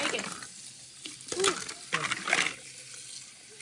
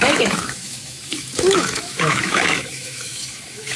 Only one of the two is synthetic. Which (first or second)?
second